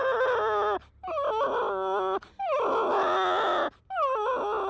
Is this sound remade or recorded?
recorded